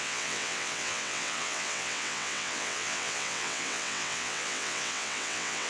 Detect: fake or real fake